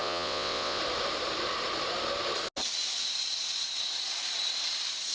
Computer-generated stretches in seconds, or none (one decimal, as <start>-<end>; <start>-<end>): 0.0-0.8

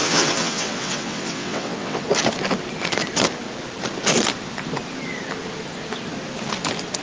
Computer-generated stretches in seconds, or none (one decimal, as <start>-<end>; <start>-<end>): 0.0-2.0

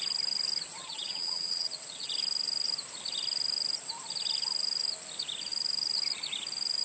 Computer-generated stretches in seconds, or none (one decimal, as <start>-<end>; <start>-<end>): 0.8-2.1

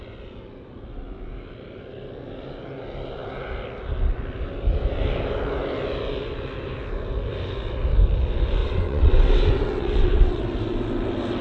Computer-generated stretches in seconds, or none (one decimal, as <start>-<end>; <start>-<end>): 8.6-10.4

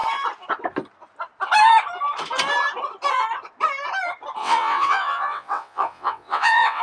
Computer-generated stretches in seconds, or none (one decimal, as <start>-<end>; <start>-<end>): 4.4-6.8

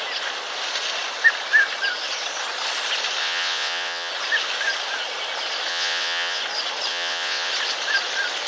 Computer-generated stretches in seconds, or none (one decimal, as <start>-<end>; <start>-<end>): 3.2-4.1; 5.7-6.4; 6.9-7.5

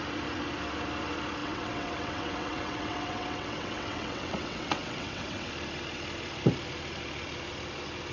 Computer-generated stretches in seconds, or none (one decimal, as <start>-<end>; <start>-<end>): 1.4-5.5

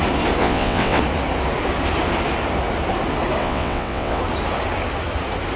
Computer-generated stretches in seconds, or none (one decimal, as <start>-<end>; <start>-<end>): 0.4-1.0; 3.4-4.2